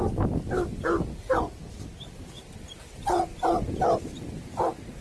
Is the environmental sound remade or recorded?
recorded